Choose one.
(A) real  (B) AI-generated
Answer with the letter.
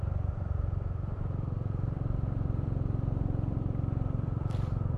B